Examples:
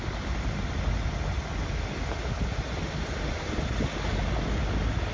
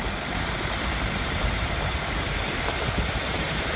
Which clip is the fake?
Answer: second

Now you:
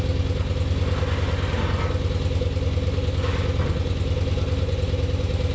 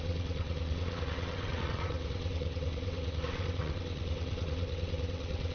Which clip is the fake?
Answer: second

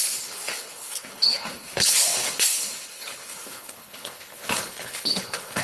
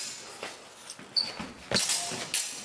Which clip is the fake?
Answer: first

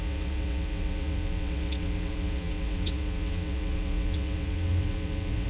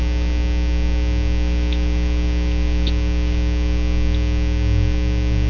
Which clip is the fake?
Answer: first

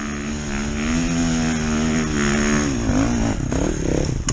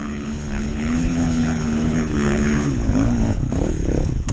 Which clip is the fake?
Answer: second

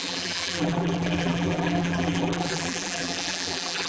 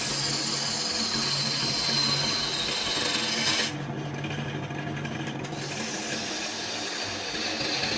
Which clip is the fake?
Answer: first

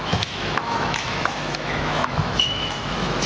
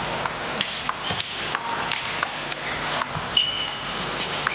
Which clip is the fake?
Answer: first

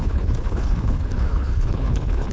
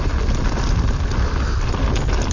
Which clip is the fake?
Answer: first